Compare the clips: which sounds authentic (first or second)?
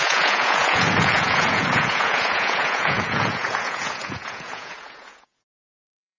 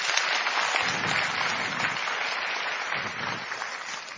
second